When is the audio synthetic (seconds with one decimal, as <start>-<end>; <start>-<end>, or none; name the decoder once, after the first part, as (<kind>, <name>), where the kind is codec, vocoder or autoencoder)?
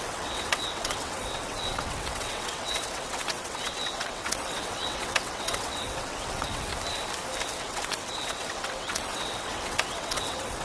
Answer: 0.0-6.7 (vocoder, WaveNeXt); 7.6-10.6